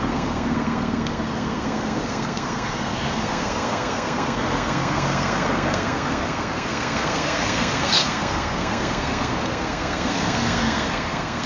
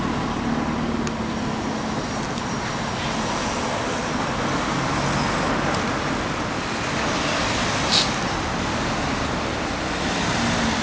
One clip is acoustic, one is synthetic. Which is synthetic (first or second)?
first